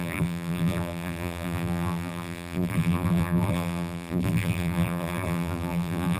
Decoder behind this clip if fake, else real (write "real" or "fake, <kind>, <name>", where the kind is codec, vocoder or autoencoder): fake, vocoder, BigVGAN v2